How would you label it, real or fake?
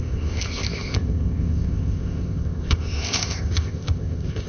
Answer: fake